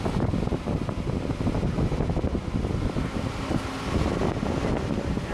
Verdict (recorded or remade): recorded